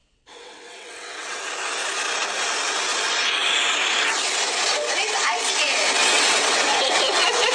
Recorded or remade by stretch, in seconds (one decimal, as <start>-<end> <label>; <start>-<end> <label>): 0.0-1.4 remade; 1.4-6.0 recorded; 6.0-7.5 remade